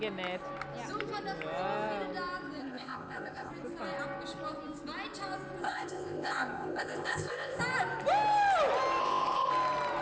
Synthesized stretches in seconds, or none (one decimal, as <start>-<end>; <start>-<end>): 2.6-3.5; 5.6-7.6; 9.0-9.5